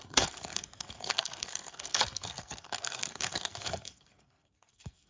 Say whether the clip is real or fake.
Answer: fake